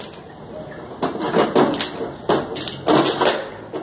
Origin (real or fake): real